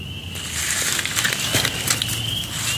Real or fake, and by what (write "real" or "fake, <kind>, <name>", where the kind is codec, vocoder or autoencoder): real